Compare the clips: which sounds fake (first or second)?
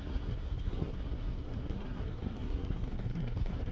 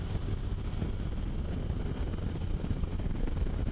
first